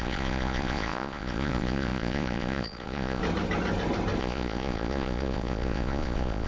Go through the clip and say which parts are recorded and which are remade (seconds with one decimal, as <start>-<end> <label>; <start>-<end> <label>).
0.0-3.2 remade; 3.2-4.2 recorded; 4.2-6.5 remade